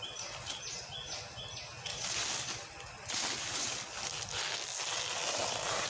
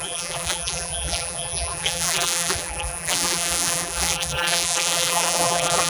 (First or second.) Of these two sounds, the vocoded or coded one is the second